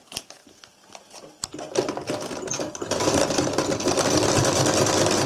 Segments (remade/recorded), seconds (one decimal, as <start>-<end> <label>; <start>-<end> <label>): 0.0-5.3 recorded